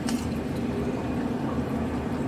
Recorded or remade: recorded